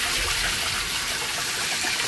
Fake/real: real